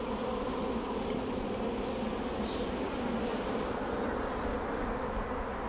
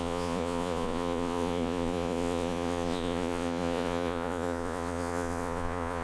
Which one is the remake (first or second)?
second